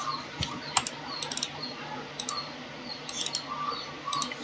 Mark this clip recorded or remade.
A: recorded